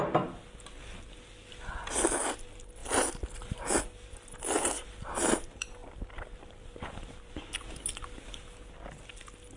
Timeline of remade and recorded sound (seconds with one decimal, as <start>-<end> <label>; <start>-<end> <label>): 0.0-2.8 recorded; 2.8-3.7 remade; 3.7-5.8 recorded; 5.8-7.3 remade; 7.3-9.6 recorded